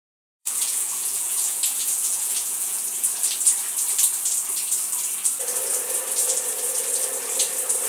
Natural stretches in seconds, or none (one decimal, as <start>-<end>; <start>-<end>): 0.0-0.4; 2.8-7.9